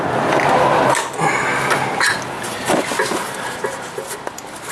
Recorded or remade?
recorded